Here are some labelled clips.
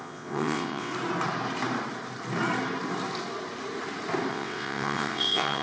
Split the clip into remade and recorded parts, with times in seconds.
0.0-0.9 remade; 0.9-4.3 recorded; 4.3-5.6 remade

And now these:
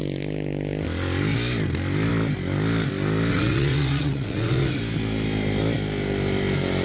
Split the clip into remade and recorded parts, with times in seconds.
0.0-3.3 recorded; 3.3-4.8 remade; 4.8-6.8 recorded